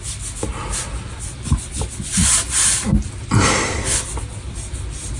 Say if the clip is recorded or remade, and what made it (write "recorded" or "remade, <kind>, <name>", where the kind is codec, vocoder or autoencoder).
recorded